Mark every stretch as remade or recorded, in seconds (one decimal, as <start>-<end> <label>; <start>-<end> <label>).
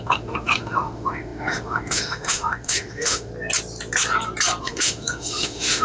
0.0-3.3 remade; 3.3-4.6 recorded; 4.6-5.8 remade